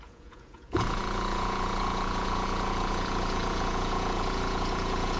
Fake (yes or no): yes